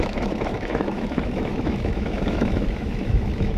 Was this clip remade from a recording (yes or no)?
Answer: yes